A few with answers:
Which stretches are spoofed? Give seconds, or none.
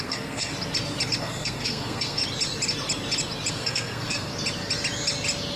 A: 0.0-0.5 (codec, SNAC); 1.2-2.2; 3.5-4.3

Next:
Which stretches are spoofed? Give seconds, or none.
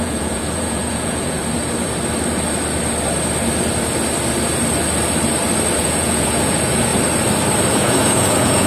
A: 0.0-1.4 (vocoder, Vocos); 5.8-6.9; 7.7-8.7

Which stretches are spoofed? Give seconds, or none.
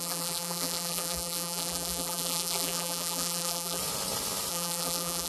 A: 0.0-3.8 (vocoder, BigVGAN v2); 4.5-5.3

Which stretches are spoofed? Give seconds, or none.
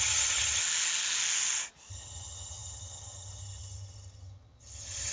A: 0.0-0.6 (vocoder, HiFi-GAN); 1.9-5.1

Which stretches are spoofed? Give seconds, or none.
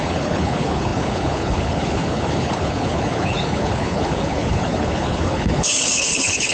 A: 0.0-6.5 (codec, HILCodec)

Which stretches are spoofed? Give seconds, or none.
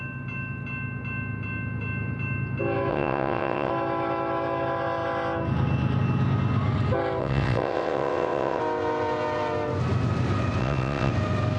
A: 2.9-3.7 (vocoder, WaveNeXt); 7.2-8.6; 10.6-11.1